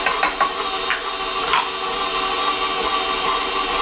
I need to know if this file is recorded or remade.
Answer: recorded